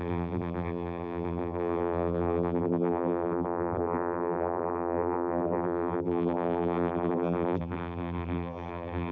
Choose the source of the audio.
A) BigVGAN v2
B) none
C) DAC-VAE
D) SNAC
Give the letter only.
A